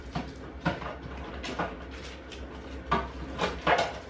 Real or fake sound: real